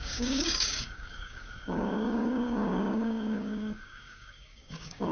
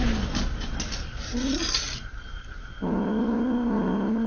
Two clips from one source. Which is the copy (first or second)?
first